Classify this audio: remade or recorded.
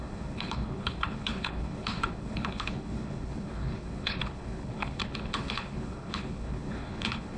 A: remade